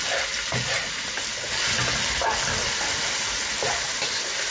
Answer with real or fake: real